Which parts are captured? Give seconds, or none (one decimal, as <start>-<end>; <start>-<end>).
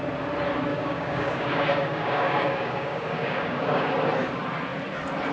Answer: 0.0-0.7; 3.9-5.3